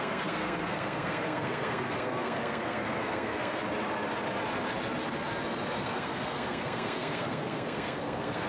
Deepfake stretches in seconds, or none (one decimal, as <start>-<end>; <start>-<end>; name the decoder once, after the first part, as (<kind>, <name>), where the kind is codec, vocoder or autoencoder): 0.0-3.6 (codec, SNAC); 5.8-8.5